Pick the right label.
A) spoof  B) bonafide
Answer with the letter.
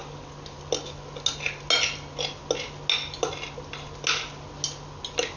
B